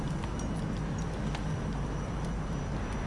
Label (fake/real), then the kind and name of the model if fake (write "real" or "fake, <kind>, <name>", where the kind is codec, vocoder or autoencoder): real